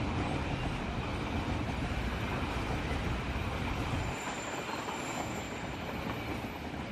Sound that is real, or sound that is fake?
real